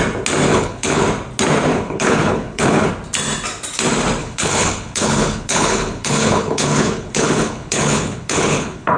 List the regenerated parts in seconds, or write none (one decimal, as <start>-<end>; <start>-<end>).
0.5-1.0; 1.7-2.9; 4.2-9.0